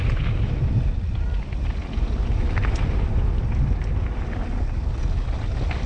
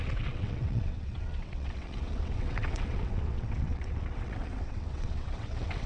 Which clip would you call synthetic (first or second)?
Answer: second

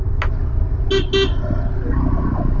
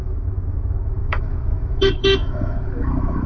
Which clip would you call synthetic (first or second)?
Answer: second